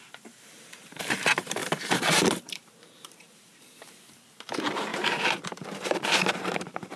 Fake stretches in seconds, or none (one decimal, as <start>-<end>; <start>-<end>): 0.0-7.0